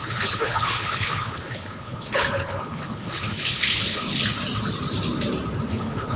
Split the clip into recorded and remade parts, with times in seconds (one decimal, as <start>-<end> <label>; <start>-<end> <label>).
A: 0.0-4.2 remade; 4.2-5.7 recorded; 5.7-6.2 remade